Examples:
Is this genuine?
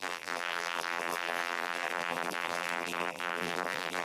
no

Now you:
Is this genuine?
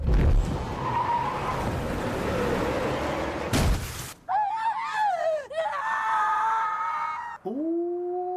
yes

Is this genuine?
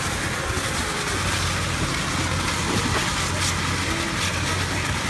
yes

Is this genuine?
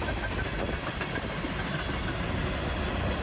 yes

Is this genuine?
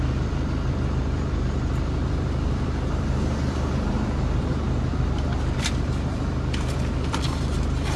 no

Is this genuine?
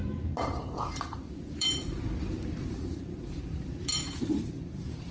no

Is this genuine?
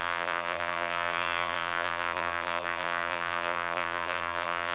no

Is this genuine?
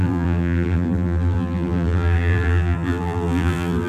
no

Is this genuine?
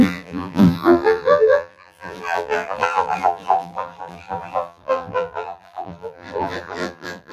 no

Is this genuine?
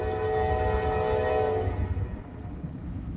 yes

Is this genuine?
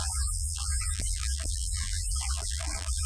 no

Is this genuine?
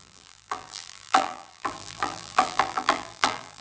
no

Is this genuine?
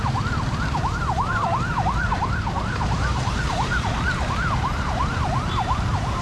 no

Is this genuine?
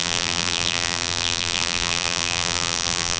no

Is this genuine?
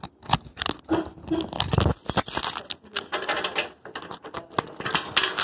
yes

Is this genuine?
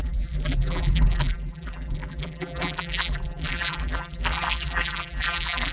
no